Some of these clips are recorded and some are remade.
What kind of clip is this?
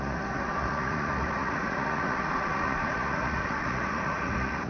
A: remade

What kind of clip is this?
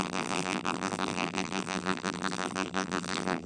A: remade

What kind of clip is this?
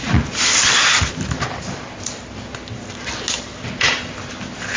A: recorded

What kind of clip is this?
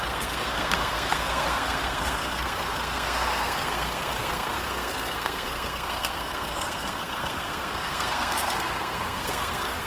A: remade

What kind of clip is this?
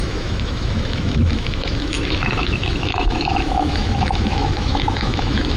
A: remade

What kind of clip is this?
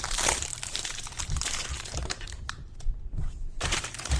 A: remade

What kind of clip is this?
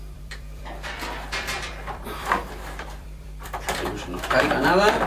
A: remade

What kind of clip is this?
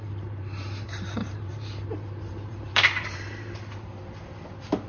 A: remade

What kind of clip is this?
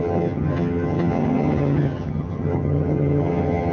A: remade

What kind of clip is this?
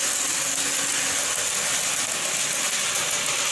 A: recorded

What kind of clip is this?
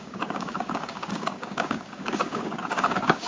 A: remade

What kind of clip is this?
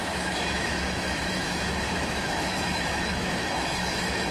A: remade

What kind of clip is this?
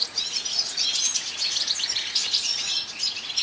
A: remade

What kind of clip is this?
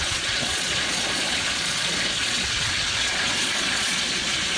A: remade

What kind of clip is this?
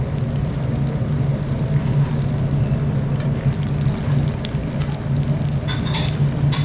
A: recorded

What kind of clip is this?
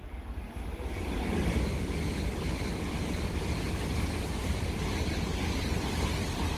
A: recorded